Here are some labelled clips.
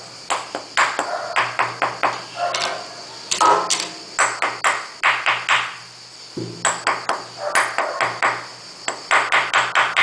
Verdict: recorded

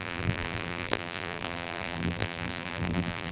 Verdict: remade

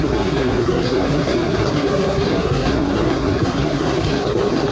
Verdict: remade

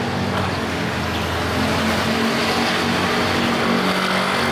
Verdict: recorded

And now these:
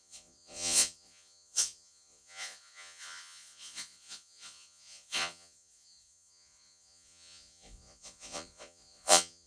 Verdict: remade